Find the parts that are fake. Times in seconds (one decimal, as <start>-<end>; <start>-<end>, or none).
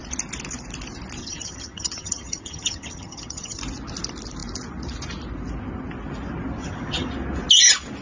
1.2-3.6; 6.6-7.1